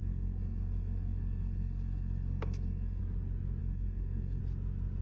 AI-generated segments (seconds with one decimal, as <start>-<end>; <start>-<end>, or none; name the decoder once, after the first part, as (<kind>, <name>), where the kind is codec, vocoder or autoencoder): 0.0-3.0 (codec, SNAC); 3.6-4.4